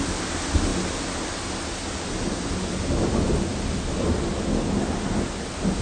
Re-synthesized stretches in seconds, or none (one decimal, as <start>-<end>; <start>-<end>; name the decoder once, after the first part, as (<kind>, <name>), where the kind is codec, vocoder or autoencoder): none